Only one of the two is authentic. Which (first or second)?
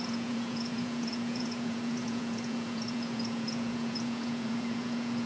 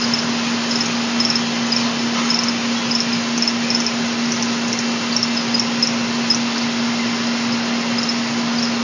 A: second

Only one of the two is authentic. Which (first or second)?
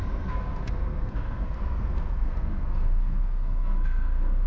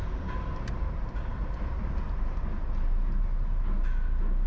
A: second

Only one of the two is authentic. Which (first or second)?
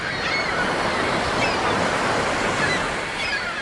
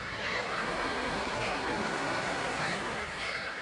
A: first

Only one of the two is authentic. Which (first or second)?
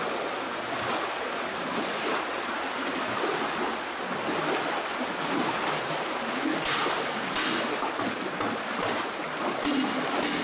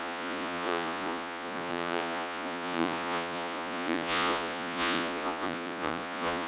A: first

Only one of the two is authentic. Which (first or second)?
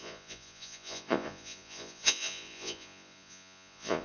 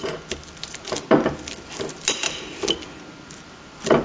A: second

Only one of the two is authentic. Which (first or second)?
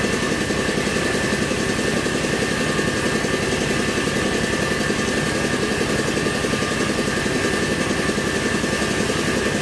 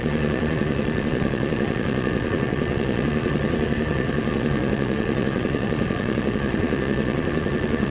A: first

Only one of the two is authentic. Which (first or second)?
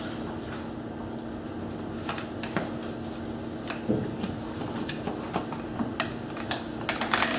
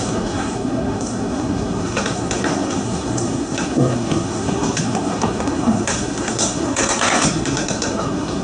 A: first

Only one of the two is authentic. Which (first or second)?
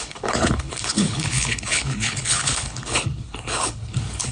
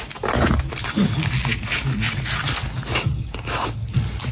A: second